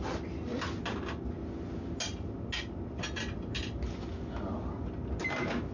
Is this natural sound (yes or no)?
yes